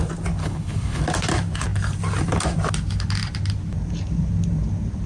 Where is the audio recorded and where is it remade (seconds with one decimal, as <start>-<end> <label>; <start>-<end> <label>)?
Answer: 0.0-0.4 recorded; 0.4-1.0 remade; 1.0-5.1 recorded